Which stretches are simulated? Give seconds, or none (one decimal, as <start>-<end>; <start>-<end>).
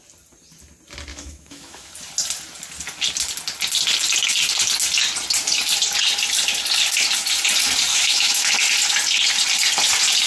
1.1-1.9; 7.9-8.5